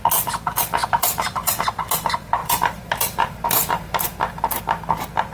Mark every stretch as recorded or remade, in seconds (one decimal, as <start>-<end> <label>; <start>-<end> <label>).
0.0-0.8 recorded; 0.8-1.5 remade; 1.5-2.4 recorded; 2.4-4.6 remade; 4.6-5.3 recorded